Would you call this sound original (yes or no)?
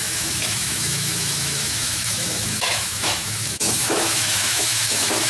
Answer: no